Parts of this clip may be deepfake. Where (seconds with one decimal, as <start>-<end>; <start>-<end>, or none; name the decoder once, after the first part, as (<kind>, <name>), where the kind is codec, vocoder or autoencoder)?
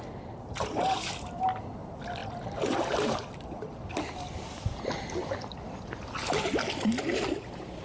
none